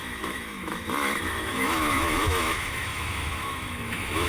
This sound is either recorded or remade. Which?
remade